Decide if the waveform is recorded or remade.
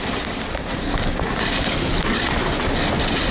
recorded